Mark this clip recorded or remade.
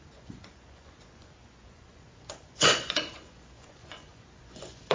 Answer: remade